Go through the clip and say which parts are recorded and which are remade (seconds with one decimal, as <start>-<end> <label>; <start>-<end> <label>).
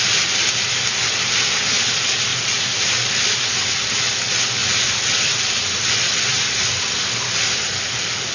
0.0-2.3 recorded; 2.3-3.1 remade; 3.1-8.3 recorded